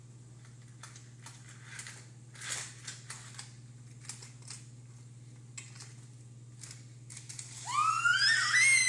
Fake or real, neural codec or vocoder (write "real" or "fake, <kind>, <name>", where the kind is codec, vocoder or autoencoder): real